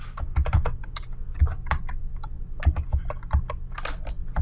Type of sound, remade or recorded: recorded